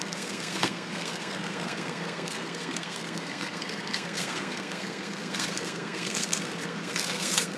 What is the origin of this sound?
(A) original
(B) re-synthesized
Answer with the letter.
B